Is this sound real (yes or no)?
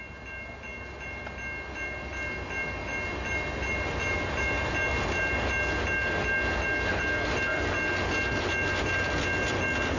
yes